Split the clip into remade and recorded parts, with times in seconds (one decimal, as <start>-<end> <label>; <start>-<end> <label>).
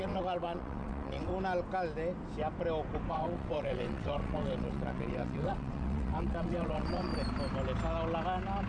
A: 0.0-1.3 remade; 1.3-3.1 recorded; 3.1-7.1 remade; 7.1-8.7 recorded